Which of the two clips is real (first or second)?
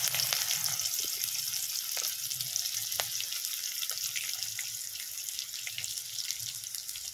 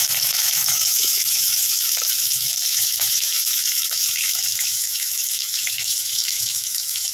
first